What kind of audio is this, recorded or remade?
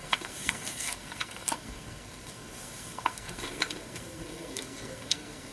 remade